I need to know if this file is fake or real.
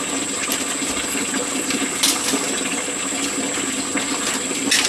real